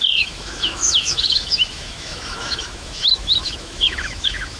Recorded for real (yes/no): no